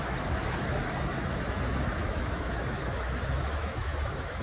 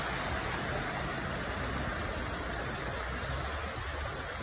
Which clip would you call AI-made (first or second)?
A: first